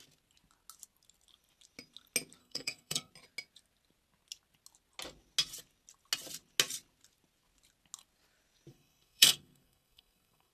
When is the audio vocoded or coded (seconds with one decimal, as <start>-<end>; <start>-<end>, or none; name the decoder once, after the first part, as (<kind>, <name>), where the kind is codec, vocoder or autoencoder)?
2.4-3.1 (codec, SNAC); 8.7-10.5